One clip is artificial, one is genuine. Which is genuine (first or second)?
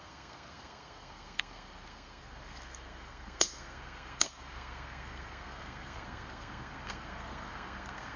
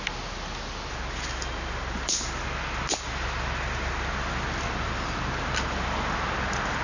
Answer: second